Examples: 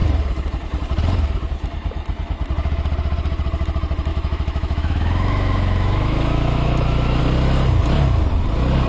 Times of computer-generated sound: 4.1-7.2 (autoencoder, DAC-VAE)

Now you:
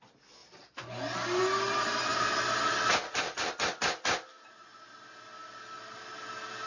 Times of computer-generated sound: none

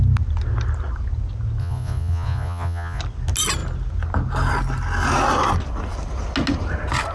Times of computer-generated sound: 1.6-3.0 (vocoder, Vocos)

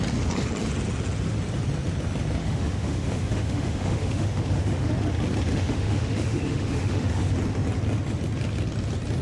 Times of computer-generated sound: 2.4-4.9 (autoencoder, DAC-VAE); 5.5-7.3

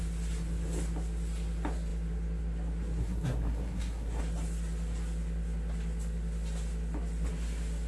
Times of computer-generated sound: 3.0-4.2 (codec, SNAC)

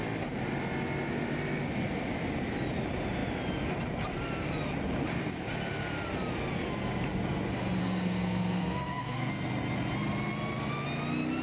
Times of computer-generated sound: 7.8-9.3 (codec, SNAC)

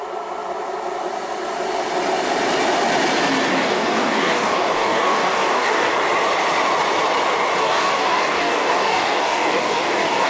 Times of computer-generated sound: 3.5-5.9 (codec, DAC); 7.6-10.3

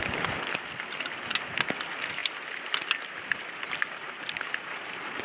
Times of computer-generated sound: none